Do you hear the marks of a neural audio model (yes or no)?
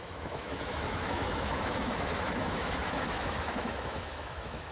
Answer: yes